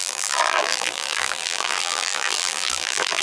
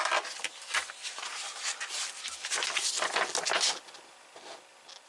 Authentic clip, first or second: second